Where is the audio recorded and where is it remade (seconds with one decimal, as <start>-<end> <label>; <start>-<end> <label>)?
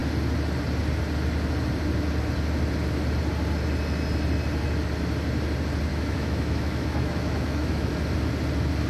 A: 0.0-5.9 recorded; 5.9-7.9 remade; 7.9-8.9 recorded